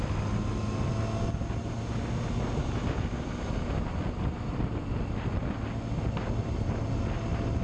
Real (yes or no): yes